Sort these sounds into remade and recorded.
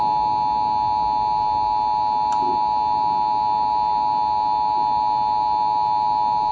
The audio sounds recorded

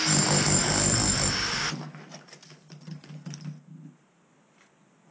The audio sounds recorded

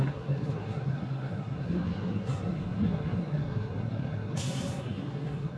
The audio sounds remade